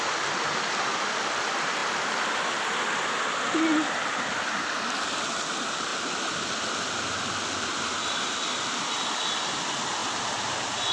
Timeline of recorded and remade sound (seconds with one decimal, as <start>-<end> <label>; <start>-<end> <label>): 0.0-10.0 recorded; 10.0-10.9 remade